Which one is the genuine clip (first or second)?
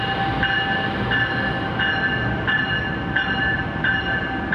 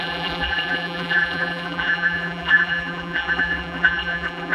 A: first